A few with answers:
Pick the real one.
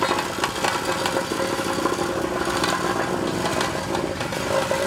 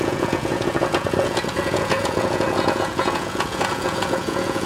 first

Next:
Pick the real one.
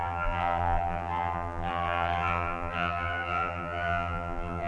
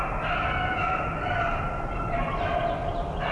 second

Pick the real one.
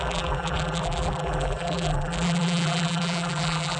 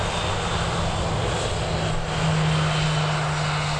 second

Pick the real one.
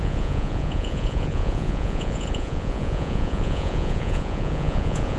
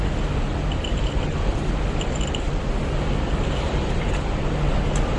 second